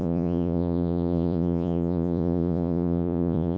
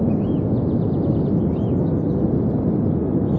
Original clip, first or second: second